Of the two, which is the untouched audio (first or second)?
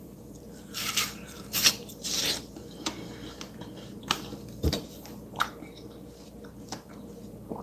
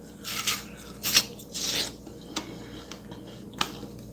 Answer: second